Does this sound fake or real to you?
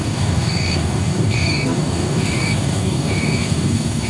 fake